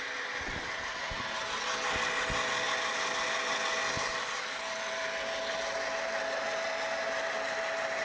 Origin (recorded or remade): recorded